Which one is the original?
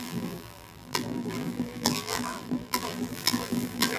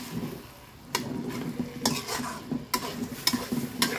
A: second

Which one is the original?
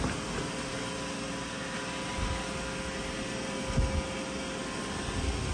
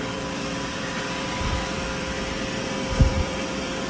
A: first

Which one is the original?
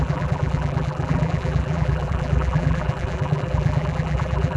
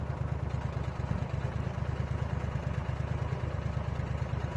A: second